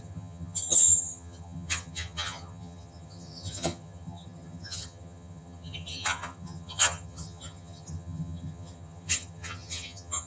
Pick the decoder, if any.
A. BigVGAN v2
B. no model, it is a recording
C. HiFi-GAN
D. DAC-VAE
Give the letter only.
C